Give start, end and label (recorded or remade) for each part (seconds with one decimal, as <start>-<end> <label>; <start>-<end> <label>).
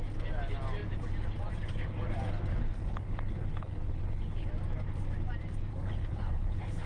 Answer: 0.0-2.8 recorded; 2.8-4.5 remade; 4.5-5.7 recorded; 5.7-6.9 remade